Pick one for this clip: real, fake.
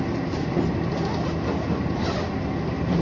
real